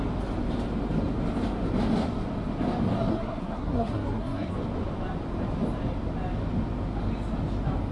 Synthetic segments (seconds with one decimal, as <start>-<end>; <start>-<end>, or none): 3.1-4.5